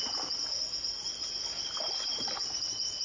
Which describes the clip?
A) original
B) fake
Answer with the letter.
A